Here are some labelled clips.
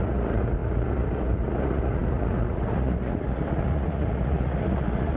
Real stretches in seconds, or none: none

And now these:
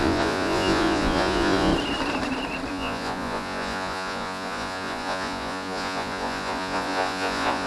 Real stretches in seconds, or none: 1.7-2.7

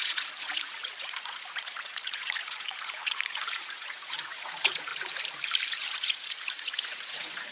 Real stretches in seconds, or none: 4.9-5.7